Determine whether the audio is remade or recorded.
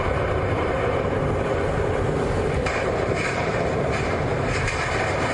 remade